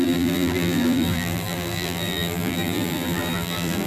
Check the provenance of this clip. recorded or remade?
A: remade